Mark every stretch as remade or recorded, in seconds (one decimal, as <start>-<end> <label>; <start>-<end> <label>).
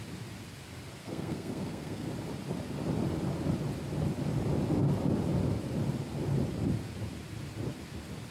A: 0.0-1.0 recorded; 1.0-2.1 remade; 2.1-8.3 recorded